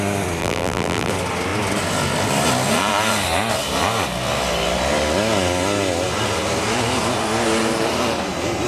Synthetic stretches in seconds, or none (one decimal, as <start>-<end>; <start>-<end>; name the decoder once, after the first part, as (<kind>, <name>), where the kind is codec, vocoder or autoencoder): 0.4-1.1 (vocoder, BigVGAN v2)